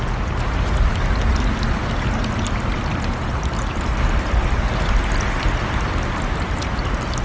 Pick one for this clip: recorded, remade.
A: recorded